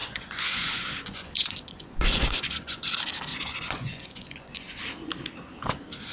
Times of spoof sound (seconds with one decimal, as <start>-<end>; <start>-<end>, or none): 0.0-2.9; 3.3-4.8

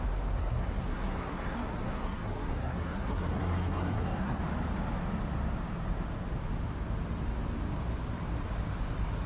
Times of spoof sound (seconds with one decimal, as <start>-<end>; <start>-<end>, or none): 0.4-4.4

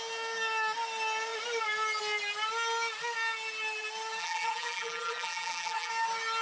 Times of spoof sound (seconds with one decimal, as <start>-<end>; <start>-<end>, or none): 4.2-5.9